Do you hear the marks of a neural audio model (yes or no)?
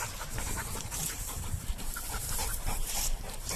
yes